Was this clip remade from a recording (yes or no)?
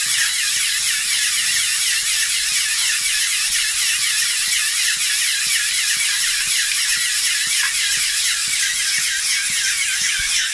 no